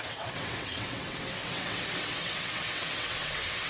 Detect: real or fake fake